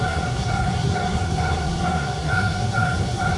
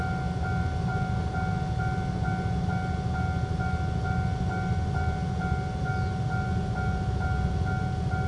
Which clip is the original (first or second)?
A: second